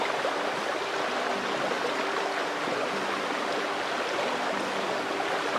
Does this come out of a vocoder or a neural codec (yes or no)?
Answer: no